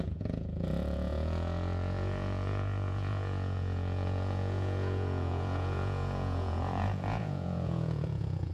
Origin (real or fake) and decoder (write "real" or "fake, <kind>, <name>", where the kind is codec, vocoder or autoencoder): fake, vocoder, Vocos